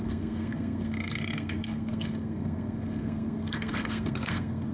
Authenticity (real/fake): fake